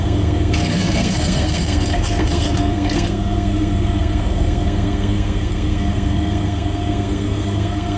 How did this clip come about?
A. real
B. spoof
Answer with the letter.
B